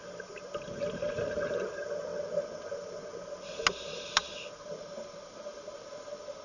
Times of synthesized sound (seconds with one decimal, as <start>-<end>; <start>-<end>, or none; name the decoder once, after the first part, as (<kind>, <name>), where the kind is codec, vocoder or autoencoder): none

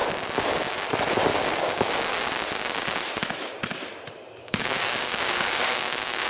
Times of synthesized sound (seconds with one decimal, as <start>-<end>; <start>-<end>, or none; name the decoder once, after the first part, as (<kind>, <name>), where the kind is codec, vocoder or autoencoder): 1.3-1.9 (codec, DAC); 4.4-6.3

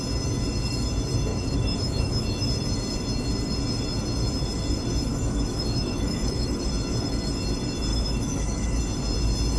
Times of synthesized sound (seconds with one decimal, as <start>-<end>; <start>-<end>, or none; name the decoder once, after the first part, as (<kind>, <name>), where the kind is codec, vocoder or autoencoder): 1.3-2.5 (autoencoder, DAC-VAE); 5.1-6.7; 7.9-8.8